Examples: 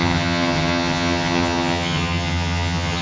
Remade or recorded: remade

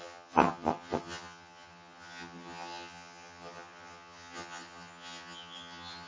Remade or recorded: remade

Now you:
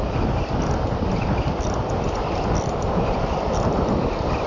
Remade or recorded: recorded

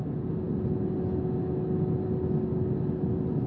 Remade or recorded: recorded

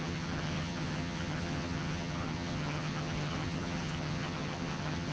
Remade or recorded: remade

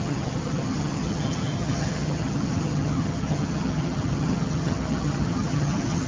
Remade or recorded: remade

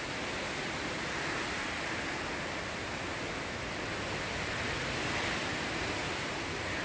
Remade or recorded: recorded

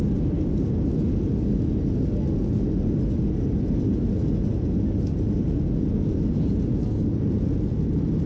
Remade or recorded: recorded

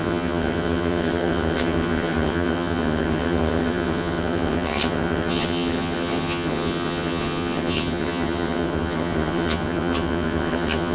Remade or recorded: remade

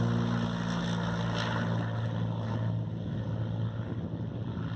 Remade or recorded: recorded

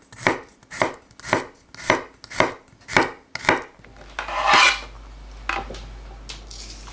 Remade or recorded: recorded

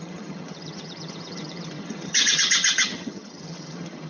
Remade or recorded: remade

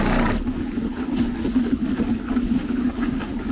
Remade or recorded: recorded